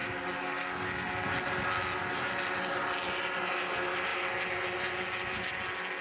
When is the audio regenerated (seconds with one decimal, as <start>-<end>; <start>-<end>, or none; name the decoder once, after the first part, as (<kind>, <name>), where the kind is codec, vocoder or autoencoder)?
none